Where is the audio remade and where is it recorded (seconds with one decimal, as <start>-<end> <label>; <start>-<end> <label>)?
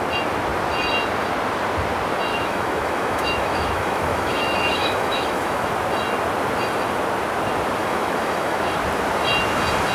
0.0-2.3 recorded; 2.3-5.7 remade; 5.7-7.8 recorded; 7.8-8.6 remade; 8.6-9.9 recorded